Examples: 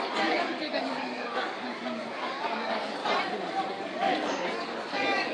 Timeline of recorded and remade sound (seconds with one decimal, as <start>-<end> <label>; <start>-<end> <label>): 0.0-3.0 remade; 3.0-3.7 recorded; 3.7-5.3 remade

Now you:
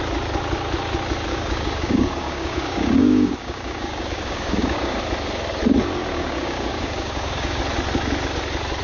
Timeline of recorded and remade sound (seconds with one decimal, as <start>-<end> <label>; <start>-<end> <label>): 0.0-1.3 recorded; 1.3-5.0 remade; 5.0-6.1 recorded; 6.1-7.6 remade; 7.6-8.8 recorded

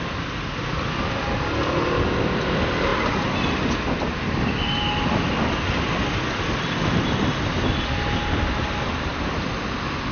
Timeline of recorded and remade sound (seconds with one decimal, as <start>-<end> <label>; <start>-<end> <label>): 0.0-10.1 recorded